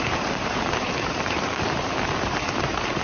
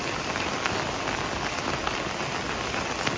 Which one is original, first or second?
second